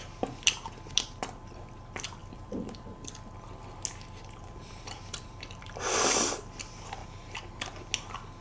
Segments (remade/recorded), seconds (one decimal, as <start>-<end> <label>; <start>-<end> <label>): 0.0-2.2 recorded; 2.2-3.1 remade; 3.1-4.6 recorded; 4.6-5.8 remade; 5.8-8.4 recorded

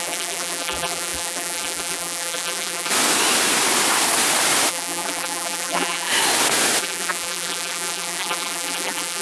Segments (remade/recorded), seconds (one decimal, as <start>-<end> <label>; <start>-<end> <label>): 0.0-2.9 remade; 2.9-4.7 recorded; 4.7-6.1 remade; 6.1-6.8 recorded; 6.8-9.2 remade

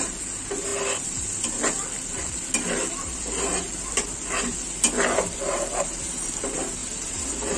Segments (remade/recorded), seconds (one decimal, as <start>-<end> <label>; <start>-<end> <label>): 0.0-6.8 recorded; 6.8-7.6 remade

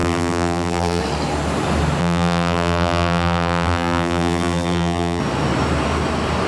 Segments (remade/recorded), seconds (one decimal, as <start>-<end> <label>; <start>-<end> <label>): 0.0-1.0 remade; 1.0-2.0 recorded; 2.0-5.2 remade; 5.2-6.5 recorded

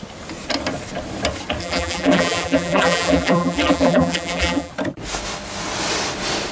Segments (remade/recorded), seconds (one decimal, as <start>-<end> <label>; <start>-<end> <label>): 0.0-1.6 recorded; 1.6-4.7 remade; 4.7-6.5 recorded

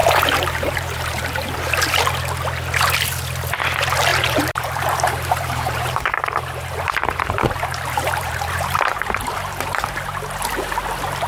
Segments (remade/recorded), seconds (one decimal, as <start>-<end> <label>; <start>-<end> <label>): 0.0-2.0 remade; 2.0-4.1 recorded; 4.1-9.0 remade; 9.0-11.3 recorded

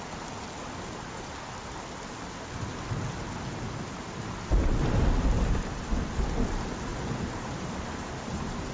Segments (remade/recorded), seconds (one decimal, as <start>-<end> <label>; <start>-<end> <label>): 0.0-6.9 recorded; 6.9-8.7 remade

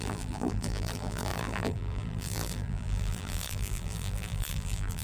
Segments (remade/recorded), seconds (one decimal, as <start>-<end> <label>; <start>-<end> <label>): 0.0-5.0 remade